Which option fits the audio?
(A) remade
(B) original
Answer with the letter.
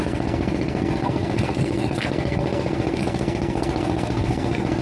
A